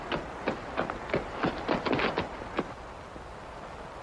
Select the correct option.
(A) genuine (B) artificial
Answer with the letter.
A